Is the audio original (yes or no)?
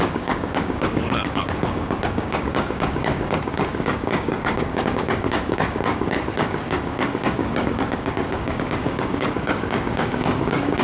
no